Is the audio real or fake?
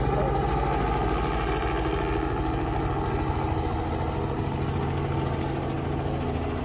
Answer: real